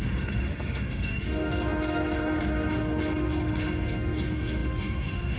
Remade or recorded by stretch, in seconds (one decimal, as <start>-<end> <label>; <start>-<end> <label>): 0.0-5.4 remade